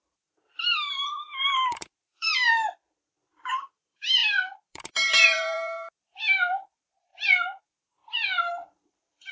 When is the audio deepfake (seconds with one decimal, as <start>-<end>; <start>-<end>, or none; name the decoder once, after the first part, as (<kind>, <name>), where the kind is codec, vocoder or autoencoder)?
0.0-2.3 (vocoder, BigVGAN v2); 3.5-7.1; 7.6-8.0; 8.5-9.3